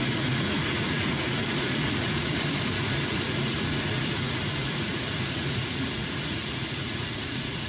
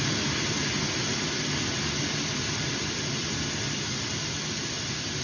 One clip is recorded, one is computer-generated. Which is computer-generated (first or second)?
first